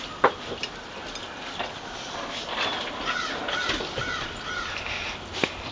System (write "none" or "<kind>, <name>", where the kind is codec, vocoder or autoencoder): none